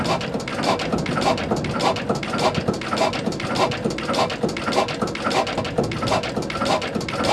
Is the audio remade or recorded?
recorded